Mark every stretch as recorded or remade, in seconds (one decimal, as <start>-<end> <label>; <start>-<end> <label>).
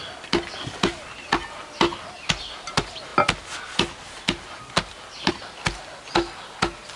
0.0-7.0 recorded